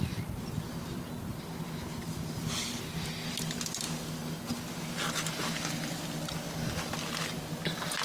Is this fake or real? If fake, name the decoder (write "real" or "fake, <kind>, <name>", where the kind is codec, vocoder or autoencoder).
real